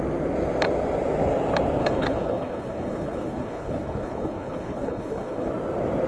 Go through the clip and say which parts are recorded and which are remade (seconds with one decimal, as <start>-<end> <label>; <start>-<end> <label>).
0.0-1.8 recorded; 1.8-5.5 remade; 5.5-6.1 recorded